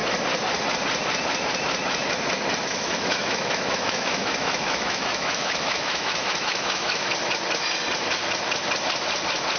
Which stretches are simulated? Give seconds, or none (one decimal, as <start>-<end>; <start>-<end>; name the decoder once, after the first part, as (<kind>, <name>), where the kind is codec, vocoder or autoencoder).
2.6-7.1 (autoencoder, DAC-VAE)

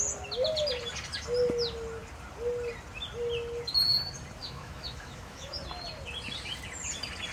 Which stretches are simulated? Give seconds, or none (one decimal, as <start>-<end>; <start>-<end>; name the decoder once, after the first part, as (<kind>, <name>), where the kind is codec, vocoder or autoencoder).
4.4-5.6 (autoencoder, DAC-VAE)